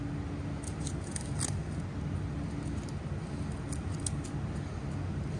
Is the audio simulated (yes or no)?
no